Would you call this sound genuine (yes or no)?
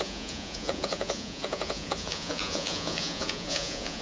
no